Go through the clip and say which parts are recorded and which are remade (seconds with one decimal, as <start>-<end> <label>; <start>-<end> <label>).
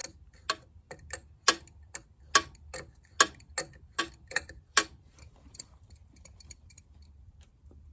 0.0-4.0 recorded; 4.0-7.9 remade